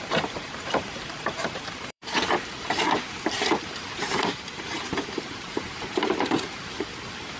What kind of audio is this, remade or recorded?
remade